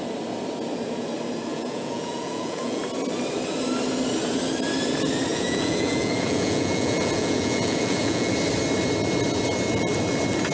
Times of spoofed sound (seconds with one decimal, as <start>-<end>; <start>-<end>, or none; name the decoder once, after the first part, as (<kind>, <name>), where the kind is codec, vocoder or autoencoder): 1.5-2.8 (vocoder, Vocos); 5.3-8.3